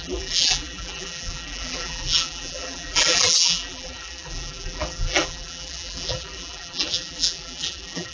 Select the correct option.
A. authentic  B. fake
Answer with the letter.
B